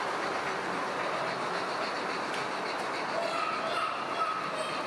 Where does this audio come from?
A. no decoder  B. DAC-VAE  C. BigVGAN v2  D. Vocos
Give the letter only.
A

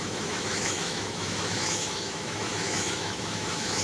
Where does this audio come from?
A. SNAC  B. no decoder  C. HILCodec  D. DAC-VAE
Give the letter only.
D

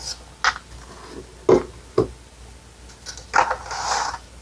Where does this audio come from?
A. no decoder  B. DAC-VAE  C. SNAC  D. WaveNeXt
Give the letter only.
A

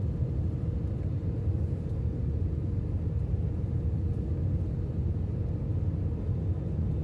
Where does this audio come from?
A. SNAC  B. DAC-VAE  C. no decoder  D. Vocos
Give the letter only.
C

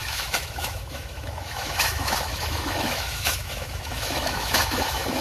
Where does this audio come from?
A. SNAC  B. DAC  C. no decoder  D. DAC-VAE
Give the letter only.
D